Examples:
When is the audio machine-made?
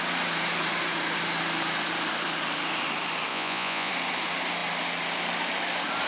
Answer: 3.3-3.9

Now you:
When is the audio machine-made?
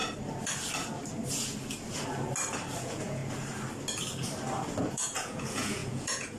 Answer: 2.8-3.2; 4.9-6.4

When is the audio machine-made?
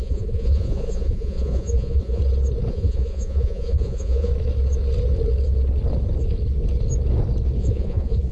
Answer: 0.0-2.2; 2.7-4.3; 7.6-8.3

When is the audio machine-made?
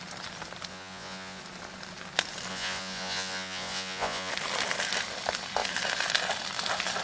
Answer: 0.7-1.4; 2.5-4.3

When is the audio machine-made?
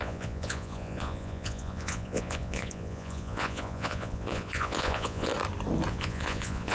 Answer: 0.0-5.3; 5.9-6.7